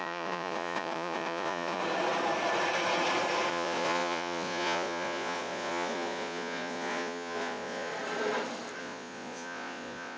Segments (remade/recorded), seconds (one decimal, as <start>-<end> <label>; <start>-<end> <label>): 0.0-1.8 remade; 1.8-3.5 recorded; 3.5-7.9 remade; 7.9-8.8 recorded; 8.8-10.2 remade